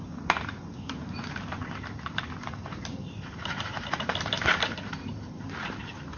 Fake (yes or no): yes